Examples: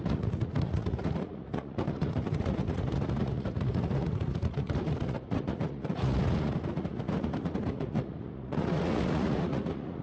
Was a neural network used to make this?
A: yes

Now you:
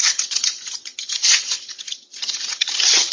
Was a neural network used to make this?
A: yes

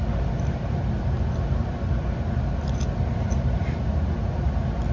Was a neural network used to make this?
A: no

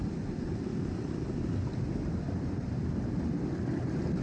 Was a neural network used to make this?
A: no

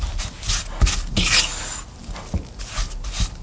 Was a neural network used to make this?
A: no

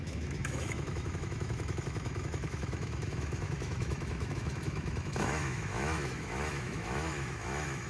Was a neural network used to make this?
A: yes